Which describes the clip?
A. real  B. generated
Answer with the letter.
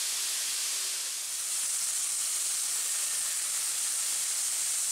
A